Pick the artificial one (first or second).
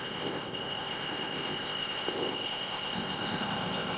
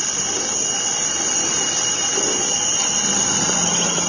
first